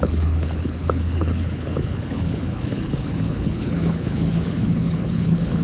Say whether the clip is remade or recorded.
remade